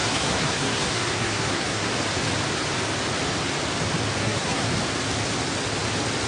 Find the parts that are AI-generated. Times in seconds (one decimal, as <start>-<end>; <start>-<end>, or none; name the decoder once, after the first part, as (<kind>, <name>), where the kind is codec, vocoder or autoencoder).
0.0-1.9 (codec, SNAC); 4.2-4.7